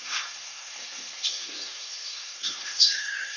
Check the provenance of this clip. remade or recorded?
remade